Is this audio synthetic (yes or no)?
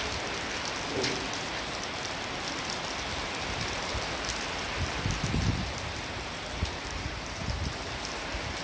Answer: no